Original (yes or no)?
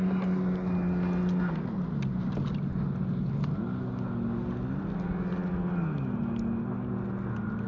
yes